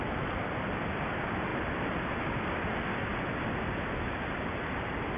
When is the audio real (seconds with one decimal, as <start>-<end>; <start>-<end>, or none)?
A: 0.0-5.2

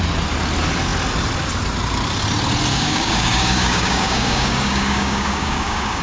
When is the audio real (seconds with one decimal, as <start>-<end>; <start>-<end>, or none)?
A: 0.0-2.7